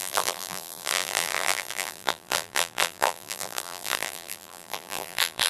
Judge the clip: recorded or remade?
remade